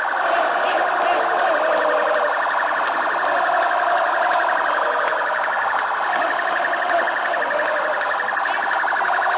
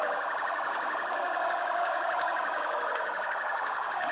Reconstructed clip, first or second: second